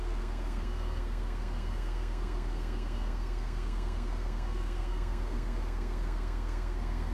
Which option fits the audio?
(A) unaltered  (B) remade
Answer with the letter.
B